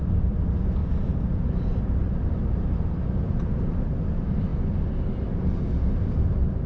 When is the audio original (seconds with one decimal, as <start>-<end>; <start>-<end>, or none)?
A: 0.0-6.7